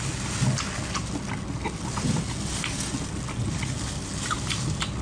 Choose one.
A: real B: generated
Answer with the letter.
A